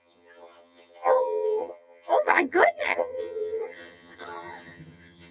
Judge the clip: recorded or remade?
remade